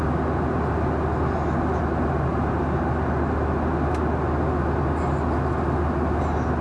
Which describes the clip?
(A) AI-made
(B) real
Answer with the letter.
B